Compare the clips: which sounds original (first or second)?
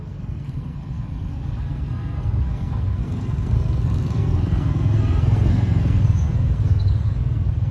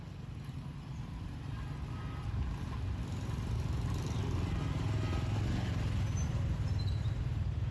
second